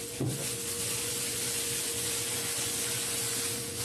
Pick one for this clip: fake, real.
fake